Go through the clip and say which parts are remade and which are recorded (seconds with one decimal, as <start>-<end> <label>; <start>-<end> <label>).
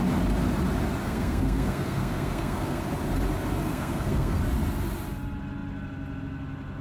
0.0-1.0 recorded; 1.0-2.8 remade; 2.8-3.7 recorded; 3.7-4.4 remade; 4.4-6.8 recorded